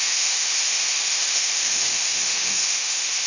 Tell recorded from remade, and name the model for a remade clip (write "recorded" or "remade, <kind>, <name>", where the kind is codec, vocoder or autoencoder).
remade, autoencoder, DAC-VAE